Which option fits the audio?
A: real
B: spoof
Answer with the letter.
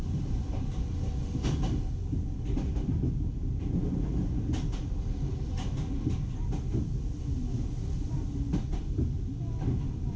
A